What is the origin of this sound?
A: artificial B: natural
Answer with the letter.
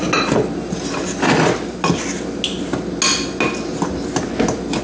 B